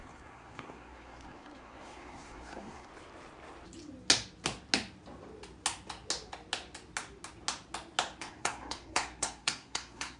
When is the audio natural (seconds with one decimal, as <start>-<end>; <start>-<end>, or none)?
2.9-8.2